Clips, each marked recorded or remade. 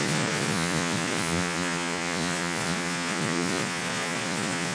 remade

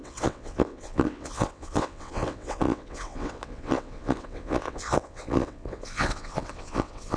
remade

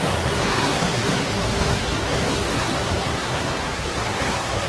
remade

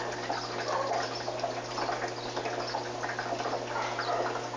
recorded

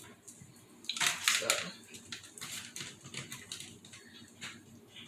recorded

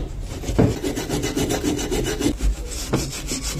recorded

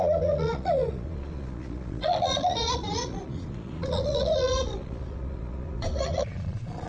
remade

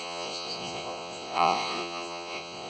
remade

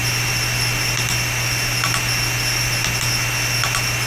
recorded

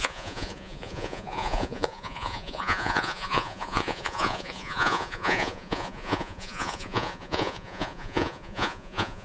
remade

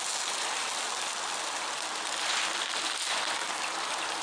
recorded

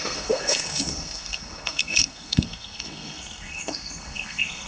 remade